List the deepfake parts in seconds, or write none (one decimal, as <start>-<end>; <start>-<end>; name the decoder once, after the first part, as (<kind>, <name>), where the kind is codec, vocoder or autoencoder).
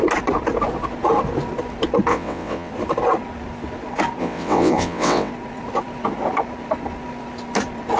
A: 2.1-2.7 (vocoder, WaveNeXt); 4.2-5.3